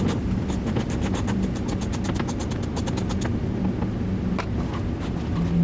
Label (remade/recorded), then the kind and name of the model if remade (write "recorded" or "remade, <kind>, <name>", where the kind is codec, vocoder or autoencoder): recorded